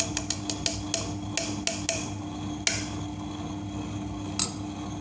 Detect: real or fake real